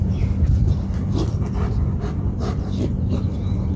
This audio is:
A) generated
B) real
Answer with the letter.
B